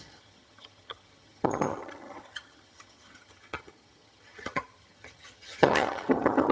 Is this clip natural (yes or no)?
no